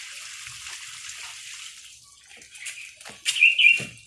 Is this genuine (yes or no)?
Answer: yes